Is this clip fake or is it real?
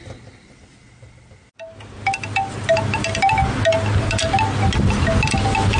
real